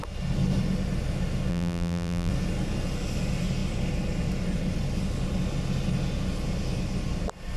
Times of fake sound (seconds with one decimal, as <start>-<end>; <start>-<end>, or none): 1.5-2.3